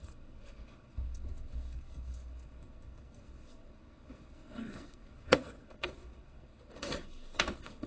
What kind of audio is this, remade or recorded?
remade